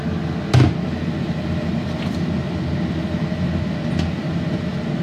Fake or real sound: real